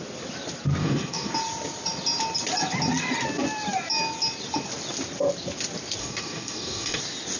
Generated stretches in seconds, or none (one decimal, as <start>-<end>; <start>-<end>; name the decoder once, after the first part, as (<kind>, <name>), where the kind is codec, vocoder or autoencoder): 0.8-1.3 (codec, DAC); 6.0-7.0